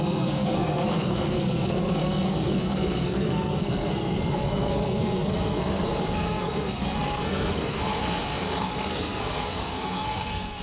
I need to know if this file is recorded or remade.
remade